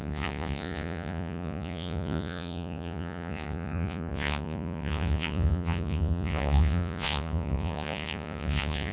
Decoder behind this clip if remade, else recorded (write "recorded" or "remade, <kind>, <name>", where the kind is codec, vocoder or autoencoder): remade, vocoder, Vocos